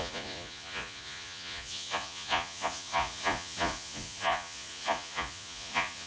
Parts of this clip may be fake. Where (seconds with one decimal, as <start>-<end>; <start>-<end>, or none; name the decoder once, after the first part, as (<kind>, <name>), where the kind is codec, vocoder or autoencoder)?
0.0-6.1 (vocoder, Vocos)